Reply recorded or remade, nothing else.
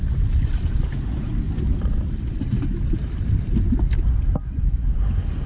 recorded